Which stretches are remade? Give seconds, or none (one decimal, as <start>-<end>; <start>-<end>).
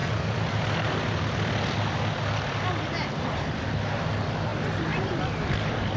none